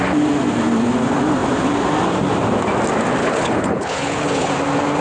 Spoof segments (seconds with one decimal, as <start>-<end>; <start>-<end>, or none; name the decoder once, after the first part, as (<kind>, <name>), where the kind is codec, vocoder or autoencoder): 3.2-4.5 (codec, HILCodec)